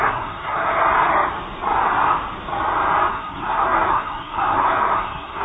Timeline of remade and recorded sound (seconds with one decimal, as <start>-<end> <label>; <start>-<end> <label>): 0.0-0.8 remade; 0.8-3.1 recorded; 3.1-5.4 remade